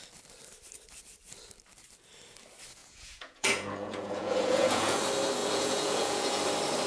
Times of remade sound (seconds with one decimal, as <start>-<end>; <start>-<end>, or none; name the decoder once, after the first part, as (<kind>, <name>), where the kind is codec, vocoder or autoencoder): 2.8-5.0 (vocoder, Vocos); 5.4-6.4